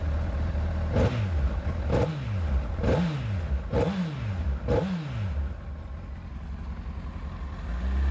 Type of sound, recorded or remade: recorded